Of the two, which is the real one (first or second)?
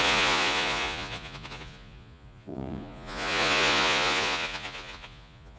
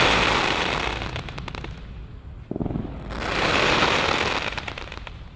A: second